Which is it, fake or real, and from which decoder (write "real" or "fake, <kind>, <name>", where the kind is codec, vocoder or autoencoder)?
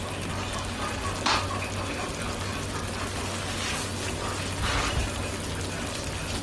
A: real